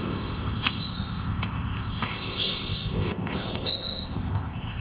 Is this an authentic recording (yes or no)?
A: no